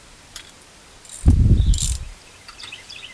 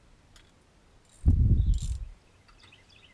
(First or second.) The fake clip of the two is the first